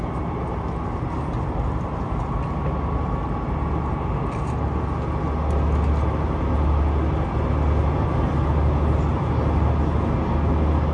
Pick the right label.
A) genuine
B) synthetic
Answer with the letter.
A